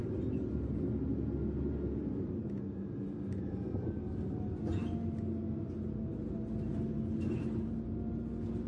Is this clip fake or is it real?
real